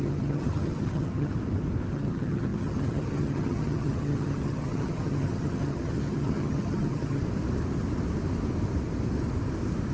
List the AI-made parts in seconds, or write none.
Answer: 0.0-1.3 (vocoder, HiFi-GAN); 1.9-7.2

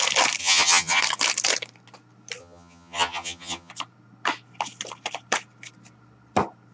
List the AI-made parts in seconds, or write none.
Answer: 0.4-1.0 (vocoder, HiFi-GAN); 2.4-3.7

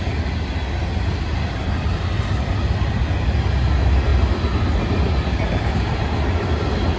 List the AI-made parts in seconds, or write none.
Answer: none

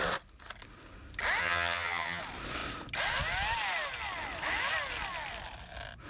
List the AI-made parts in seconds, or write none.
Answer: 1.4-2.2 (vocoder, HiFi-GAN)